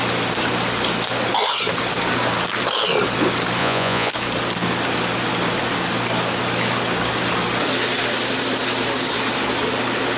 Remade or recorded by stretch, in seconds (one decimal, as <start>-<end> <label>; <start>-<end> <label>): 0.0-3.6 recorded; 3.6-4.1 remade; 4.1-10.2 recorded